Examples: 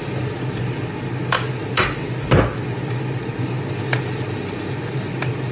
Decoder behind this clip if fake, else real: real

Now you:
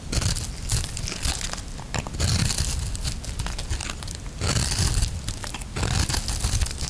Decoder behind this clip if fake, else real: real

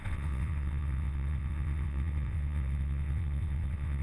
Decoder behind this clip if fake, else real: fake, vocoder, WaveNeXt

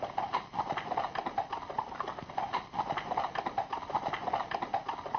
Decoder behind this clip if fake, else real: real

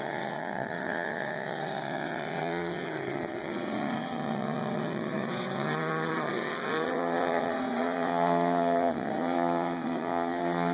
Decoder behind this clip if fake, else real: fake, vocoder, WaveNeXt